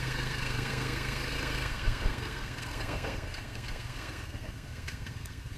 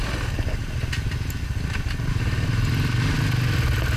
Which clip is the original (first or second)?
second